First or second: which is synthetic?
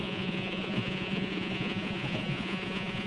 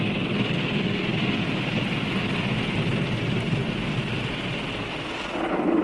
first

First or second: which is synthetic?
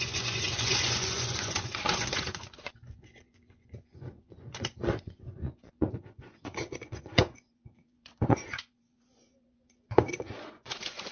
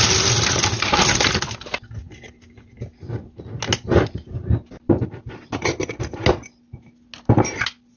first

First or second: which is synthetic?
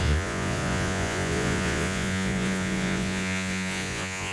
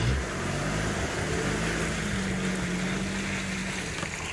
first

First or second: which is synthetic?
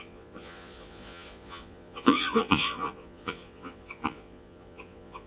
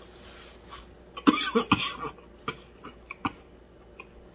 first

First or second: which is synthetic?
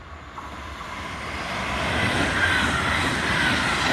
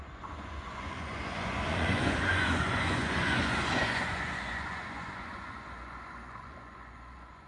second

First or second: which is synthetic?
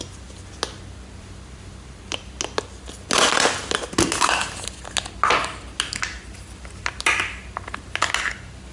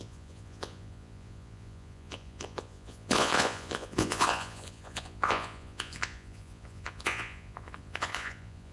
second